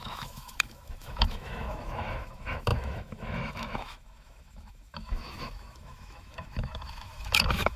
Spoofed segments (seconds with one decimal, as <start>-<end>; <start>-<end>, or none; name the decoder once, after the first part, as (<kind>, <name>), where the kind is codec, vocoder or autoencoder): 0.0-7.8 (autoencoder, DAC-VAE)